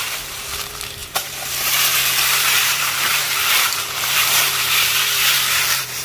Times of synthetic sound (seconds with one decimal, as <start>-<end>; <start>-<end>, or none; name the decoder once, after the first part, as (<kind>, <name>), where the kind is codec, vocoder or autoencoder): 0.0-6.0 (vocoder, BigVGAN v2)